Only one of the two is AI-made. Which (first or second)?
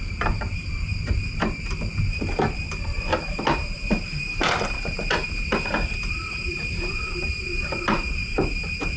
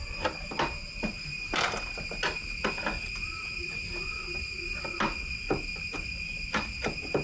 first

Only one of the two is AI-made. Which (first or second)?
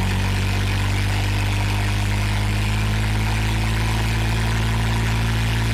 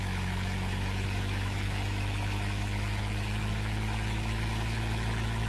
second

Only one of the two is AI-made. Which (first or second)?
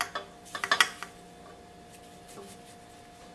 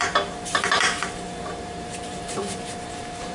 second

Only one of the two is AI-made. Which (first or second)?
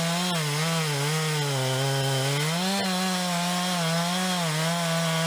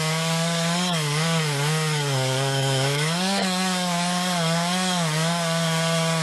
second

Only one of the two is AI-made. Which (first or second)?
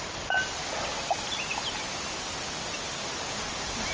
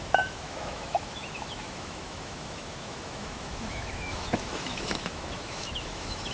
second